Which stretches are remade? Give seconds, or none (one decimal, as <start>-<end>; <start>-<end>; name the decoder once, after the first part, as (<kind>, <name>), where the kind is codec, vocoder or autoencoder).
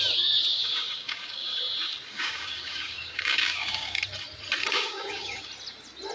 0.5-1.6 (codec, DAC); 2.1-4.0; 4.6-5.4